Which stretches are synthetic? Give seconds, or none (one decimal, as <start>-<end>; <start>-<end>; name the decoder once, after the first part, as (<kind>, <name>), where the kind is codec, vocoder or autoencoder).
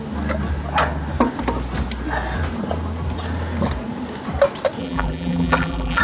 4.8-6.0 (vocoder, BigVGAN v2)